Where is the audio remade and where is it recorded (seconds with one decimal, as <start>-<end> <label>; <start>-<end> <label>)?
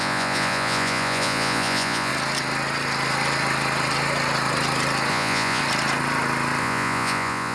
0.0-2.1 remade; 2.1-5.1 recorded; 5.1-5.6 remade; 5.6-6.6 recorded; 6.6-7.5 remade